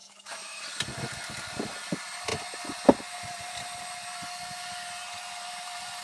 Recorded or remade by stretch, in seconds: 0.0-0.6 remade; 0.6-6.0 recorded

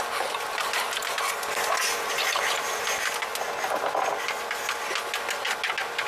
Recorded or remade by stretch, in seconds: 0.0-6.1 recorded

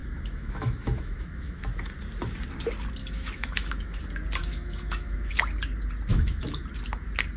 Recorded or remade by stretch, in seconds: 0.0-1.6 remade; 1.6-3.0 recorded; 3.0-4.0 remade; 4.0-4.4 recorded; 4.4-5.4 remade; 5.4-6.1 recorded; 6.1-6.6 remade; 6.6-7.4 recorded

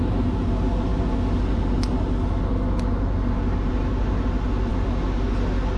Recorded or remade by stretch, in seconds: 0.0-5.8 recorded

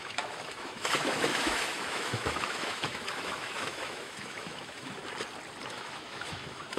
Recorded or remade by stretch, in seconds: 0.0-5.0 remade; 5.0-5.7 recorded; 5.7-6.8 remade

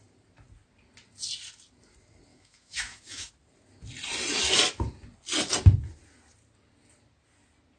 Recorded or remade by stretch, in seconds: 0.0-2.3 recorded; 2.3-3.3 remade; 3.3-7.8 recorded